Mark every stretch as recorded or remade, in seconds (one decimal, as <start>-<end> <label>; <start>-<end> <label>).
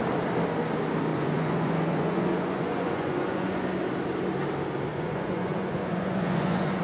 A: 0.0-1.1 recorded; 1.1-3.6 remade; 3.6-4.9 recorded; 4.9-6.8 remade